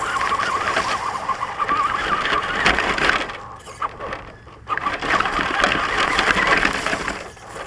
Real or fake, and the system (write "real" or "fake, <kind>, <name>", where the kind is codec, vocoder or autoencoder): real